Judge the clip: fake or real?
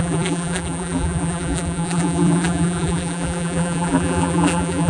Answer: fake